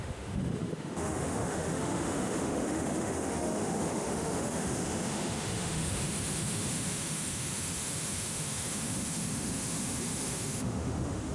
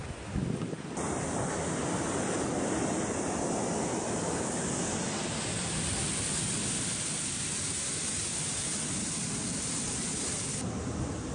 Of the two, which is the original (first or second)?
second